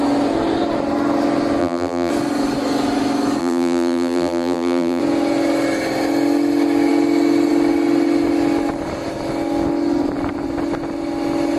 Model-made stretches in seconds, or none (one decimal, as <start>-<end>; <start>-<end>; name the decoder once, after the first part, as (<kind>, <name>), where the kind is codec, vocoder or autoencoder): 1.6-2.1 (vocoder, BigVGAN v2); 3.4-5.0